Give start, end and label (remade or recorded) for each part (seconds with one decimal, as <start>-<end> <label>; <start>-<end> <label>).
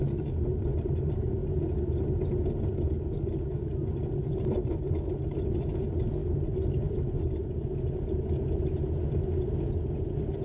0.0-10.4 recorded